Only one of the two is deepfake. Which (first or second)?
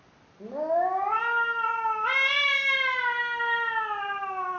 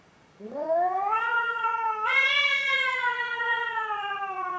second